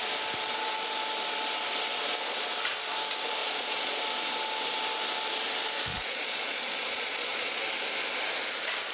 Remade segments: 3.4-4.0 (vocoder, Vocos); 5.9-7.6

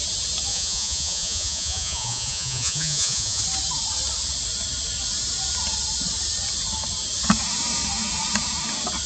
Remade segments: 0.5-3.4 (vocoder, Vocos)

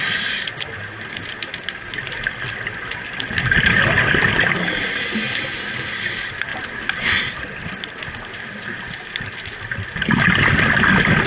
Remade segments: none

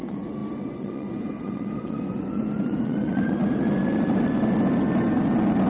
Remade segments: 0.0-3.4 (vocoder, Vocos)

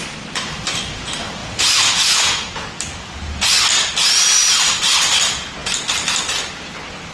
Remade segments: 1.4-2.7 (vocoder, Vocos)